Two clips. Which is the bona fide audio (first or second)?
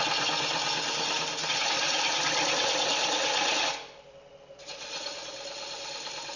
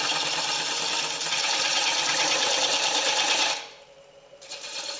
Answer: first